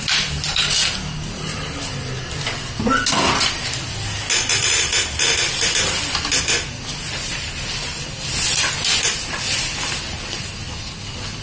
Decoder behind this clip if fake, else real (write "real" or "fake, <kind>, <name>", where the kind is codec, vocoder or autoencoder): real